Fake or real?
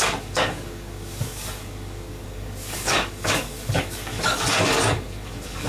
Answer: fake